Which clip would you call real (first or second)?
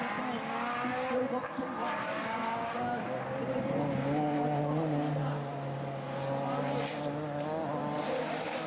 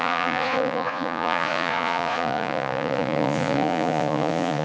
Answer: first